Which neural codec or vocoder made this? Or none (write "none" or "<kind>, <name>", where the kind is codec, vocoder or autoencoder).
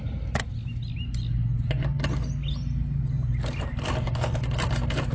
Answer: none